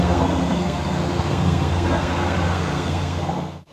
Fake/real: fake